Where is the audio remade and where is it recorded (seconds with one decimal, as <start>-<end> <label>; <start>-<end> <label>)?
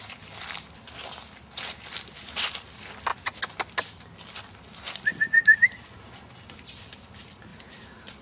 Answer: 0.0-8.2 recorded